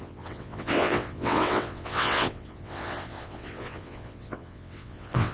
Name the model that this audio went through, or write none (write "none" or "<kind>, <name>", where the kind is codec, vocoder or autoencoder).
vocoder, WaveNeXt